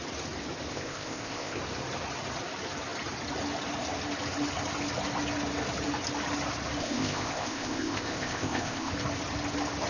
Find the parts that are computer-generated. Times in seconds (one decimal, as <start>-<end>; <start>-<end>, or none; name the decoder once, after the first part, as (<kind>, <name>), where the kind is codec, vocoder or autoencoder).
0.7-1.6 (codec, ZipCodec); 6.8-8.9